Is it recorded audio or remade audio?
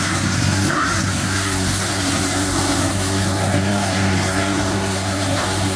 remade